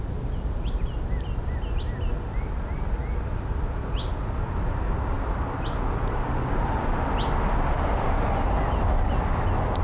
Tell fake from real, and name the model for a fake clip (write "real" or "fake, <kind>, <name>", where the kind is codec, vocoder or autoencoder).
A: real